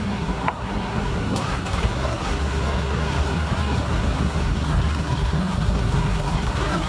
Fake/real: fake